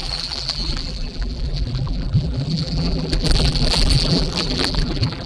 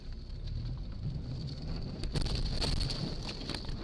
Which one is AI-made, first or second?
first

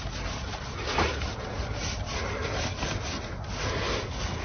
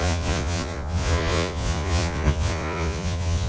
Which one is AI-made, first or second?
second